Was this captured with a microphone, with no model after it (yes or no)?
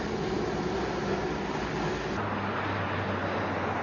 yes